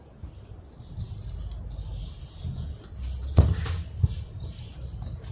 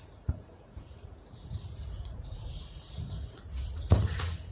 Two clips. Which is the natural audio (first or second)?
first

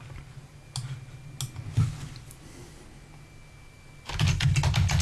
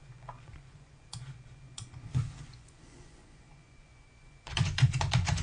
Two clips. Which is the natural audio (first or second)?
first